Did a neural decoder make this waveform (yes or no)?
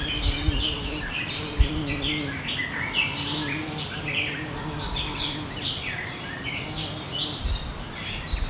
no